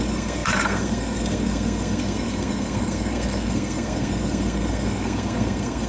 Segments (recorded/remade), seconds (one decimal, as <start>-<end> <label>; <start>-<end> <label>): 0.0-5.9 remade